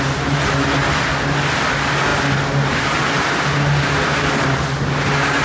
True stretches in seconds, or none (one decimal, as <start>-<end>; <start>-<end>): 0.0-5.4